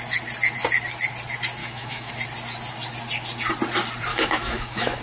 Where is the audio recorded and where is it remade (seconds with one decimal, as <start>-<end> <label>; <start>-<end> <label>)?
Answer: 0.0-1.6 recorded; 1.6-2.1 remade; 2.1-4.1 recorded; 4.1-5.0 remade